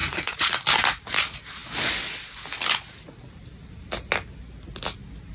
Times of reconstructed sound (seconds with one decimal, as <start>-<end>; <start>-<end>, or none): 0.0-0.5